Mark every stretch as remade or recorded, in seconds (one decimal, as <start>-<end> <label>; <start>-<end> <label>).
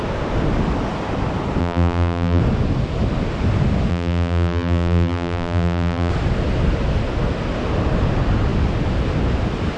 0.0-1.6 recorded; 1.6-2.4 remade; 2.4-3.9 recorded; 3.9-6.1 remade; 6.1-9.8 recorded